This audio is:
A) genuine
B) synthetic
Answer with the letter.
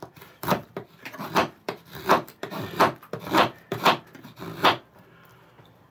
B